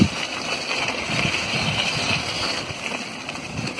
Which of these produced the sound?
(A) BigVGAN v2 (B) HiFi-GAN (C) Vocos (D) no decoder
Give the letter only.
D